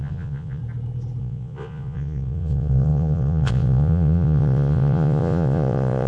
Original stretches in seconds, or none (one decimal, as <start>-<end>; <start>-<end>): 0.6-1.2